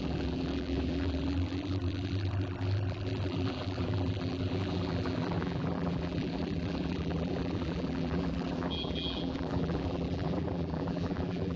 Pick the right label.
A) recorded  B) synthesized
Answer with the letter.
B